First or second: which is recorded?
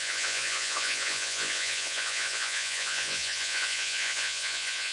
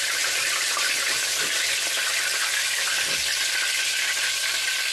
second